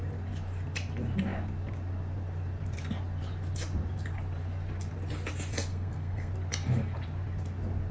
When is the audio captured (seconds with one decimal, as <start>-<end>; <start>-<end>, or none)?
0.0-5.7; 6.3-7.9